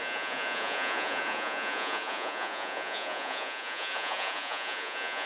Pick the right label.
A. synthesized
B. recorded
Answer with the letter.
A